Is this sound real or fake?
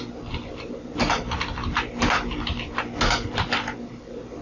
real